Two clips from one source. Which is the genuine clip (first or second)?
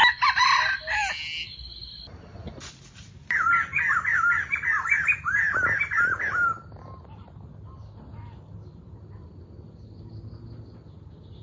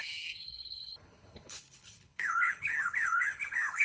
first